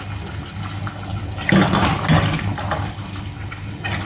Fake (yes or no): no